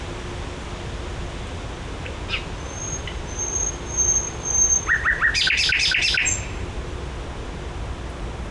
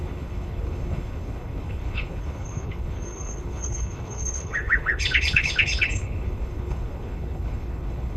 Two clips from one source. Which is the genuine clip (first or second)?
first